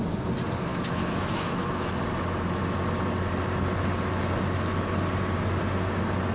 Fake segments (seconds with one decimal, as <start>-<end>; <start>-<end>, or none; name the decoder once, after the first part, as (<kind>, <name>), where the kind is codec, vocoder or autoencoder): 0.7-2.0 (autoencoder, DAC-VAE)